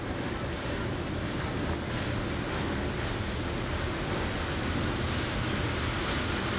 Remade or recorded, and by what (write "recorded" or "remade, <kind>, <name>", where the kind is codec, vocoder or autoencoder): recorded